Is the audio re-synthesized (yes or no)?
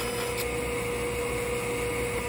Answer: no